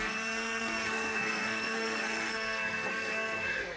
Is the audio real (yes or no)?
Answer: no